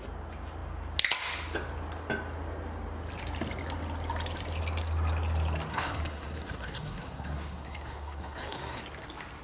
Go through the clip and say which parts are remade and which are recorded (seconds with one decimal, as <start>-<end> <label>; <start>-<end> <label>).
0.0-5.7 recorded; 5.7-8.8 remade; 8.8-9.4 recorded